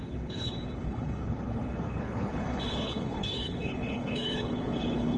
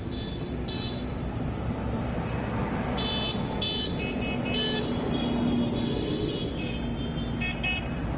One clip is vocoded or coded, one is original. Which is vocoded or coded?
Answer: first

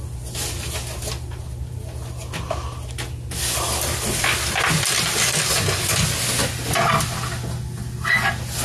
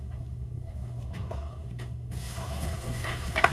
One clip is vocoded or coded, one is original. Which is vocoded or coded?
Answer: second